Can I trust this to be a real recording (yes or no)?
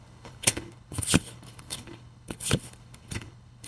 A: no